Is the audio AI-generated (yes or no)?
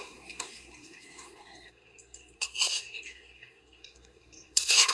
yes